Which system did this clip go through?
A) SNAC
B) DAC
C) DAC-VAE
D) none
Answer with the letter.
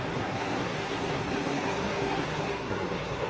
A